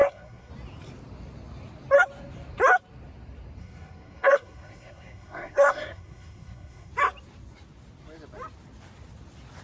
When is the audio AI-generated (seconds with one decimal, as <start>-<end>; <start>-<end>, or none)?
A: 0.0-0.5; 3.6-6.9